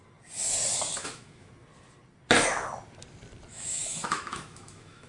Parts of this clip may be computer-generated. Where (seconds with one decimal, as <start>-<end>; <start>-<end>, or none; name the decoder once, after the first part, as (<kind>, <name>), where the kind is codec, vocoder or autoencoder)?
1.0-1.5 (autoencoder, DAC-VAE); 3.5-5.1